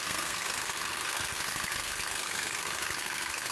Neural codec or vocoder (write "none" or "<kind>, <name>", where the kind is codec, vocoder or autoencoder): codec, SNAC